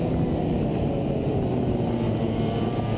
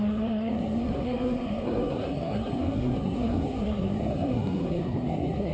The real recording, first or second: first